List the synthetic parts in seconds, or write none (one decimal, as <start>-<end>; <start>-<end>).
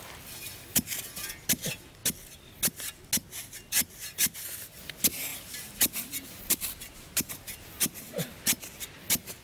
5.3-7.3